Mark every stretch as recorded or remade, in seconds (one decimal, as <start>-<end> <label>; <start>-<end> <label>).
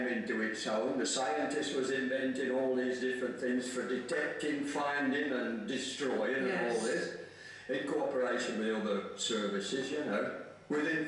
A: 0.0-11.1 recorded